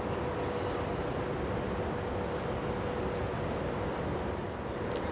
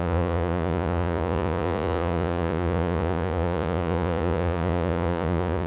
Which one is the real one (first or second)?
first